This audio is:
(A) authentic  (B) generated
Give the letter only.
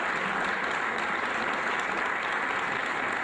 A